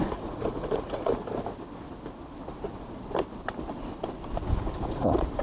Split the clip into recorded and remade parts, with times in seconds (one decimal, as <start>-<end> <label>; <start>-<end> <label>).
0.0-1.2 remade; 1.2-4.4 recorded; 4.4-5.4 remade